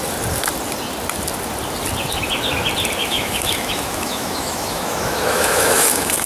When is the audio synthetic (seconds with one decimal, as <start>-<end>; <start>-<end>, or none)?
3.0-6.3